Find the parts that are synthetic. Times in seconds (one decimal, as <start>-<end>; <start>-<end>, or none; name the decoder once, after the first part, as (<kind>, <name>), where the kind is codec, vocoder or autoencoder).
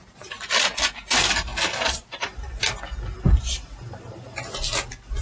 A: none